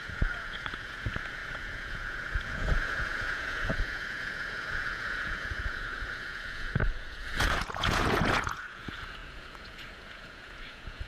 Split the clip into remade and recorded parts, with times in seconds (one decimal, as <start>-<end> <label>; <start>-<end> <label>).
0.0-11.1 remade